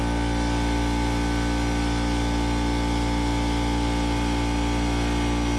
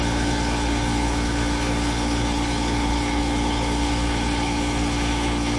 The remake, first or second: second